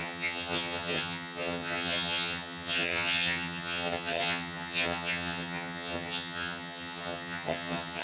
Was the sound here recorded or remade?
remade